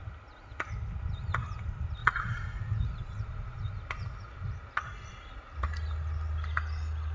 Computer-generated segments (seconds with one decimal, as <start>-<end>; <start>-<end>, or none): 2.0-3.7